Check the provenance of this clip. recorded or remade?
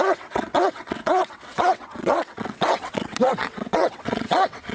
remade